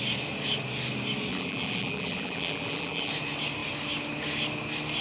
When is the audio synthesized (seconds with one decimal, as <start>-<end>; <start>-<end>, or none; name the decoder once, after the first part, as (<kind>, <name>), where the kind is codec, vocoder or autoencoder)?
1.3-3.1 (vocoder, BigVGAN v2)